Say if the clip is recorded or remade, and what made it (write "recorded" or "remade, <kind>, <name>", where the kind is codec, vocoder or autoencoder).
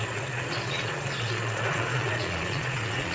remade, vocoder, Vocos